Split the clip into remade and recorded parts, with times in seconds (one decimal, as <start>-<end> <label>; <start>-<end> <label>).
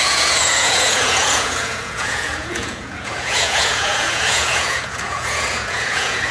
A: 0.0-6.3 remade